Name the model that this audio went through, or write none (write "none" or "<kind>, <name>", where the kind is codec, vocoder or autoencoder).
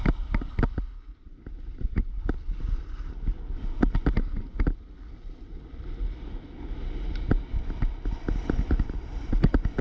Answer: none